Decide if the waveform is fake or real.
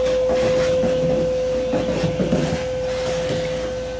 real